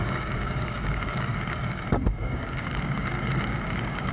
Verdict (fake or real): fake